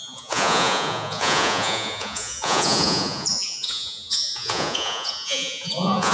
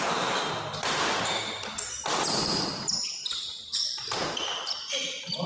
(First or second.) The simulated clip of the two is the first